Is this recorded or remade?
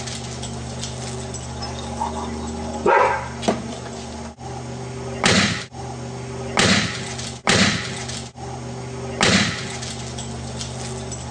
recorded